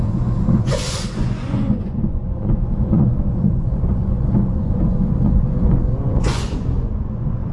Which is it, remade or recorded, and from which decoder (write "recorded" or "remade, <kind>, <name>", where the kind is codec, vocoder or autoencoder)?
remade, vocoder, Vocos